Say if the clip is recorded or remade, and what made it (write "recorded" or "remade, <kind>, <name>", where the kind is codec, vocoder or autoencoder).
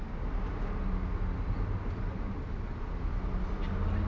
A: recorded